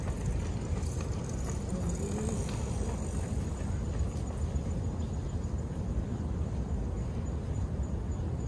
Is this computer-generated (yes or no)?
no